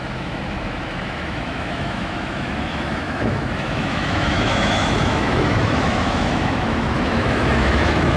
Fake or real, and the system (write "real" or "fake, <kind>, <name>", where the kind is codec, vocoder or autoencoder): fake, autoencoder, DAC-VAE